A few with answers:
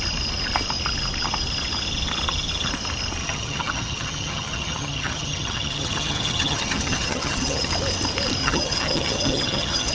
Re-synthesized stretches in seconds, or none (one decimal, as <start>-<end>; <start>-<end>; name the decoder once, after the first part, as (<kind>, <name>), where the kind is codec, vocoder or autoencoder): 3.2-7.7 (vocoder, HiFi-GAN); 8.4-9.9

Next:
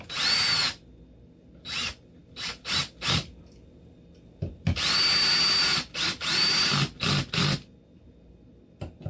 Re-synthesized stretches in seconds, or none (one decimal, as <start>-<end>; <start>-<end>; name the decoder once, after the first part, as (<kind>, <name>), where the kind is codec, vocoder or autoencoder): 2.2-5.3 (vocoder, BigVGAN v2); 5.7-6.7

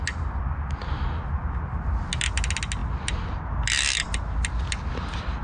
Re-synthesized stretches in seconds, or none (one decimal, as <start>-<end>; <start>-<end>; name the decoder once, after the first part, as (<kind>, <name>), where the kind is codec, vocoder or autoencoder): none

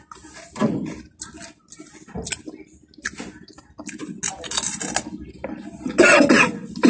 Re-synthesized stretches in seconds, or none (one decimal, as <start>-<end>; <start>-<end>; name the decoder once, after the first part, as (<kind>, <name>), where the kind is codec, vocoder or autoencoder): none

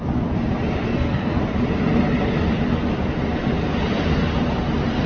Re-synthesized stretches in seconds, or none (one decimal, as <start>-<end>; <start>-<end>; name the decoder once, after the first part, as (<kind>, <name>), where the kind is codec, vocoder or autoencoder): 0.9-1.4 (codec, SNAC)

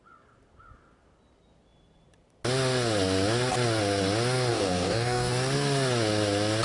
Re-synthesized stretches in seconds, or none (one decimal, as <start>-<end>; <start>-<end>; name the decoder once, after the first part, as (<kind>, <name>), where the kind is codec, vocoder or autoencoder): 4.5-5.3 (codec, DAC)